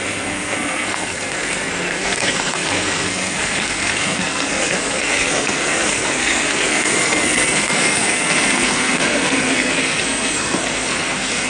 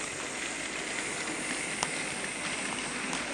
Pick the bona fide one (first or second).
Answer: second